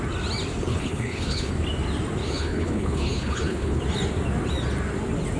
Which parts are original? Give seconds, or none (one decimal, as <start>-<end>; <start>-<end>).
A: 0.0-0.7; 1.5-2.2; 3.8-5.4